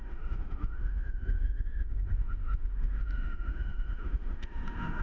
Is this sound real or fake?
fake